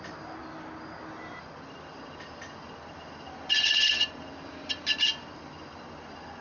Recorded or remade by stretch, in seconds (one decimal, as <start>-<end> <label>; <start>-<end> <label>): 0.0-0.4 recorded; 0.4-2.0 remade; 2.0-6.4 recorded

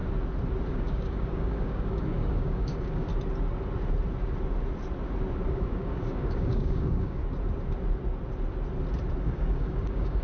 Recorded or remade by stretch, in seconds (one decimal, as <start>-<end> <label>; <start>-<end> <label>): 0.0-0.7 recorded; 0.7-3.1 remade; 3.1-5.5 recorded; 5.5-7.2 remade; 7.2-9.2 recorded; 9.2-10.2 remade

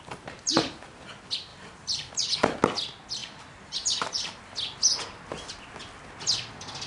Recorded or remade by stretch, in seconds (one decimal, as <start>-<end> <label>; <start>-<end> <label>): 0.0-1.5 recorded; 1.5-2.1 remade; 2.1-3.2 recorded; 3.2-4.4 remade; 4.4-6.9 recorded

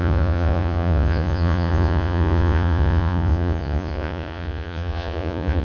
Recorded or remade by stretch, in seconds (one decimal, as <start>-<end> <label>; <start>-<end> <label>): 0.0-5.6 remade

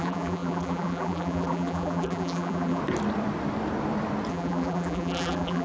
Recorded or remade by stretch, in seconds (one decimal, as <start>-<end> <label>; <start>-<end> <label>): 0.0-2.8 remade; 2.8-4.3 recorded; 4.3-5.6 remade

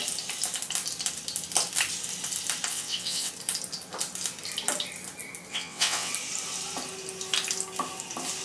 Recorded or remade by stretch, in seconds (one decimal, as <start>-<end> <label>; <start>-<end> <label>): 0.0-2.7 recorded; 2.7-3.3 remade; 3.3-5.5 recorded; 5.5-6.1 remade; 6.1-8.4 recorded

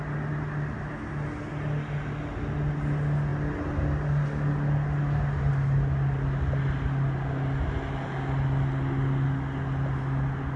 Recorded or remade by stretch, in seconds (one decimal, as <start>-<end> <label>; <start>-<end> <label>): 0.0-10.6 recorded